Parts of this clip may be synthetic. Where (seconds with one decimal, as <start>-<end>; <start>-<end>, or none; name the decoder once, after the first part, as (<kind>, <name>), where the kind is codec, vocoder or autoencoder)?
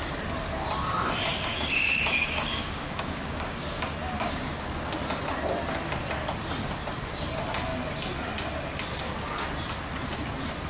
1.3-4.5 (codec, DAC)